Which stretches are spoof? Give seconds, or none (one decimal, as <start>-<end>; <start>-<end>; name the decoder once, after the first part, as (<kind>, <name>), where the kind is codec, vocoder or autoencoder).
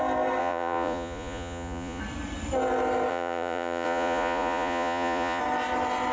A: 0.4-2.0 (vocoder, Vocos); 3.1-5.4